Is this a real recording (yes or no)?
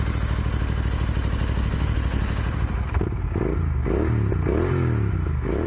yes